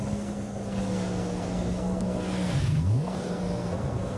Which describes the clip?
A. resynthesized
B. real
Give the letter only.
A